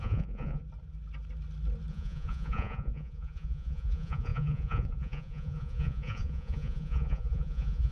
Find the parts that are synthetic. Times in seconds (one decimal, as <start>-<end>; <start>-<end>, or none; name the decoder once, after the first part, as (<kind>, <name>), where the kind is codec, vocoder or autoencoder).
0.0-0.6 (vocoder, Vocos); 1.9-7.9